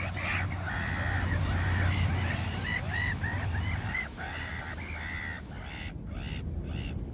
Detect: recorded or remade recorded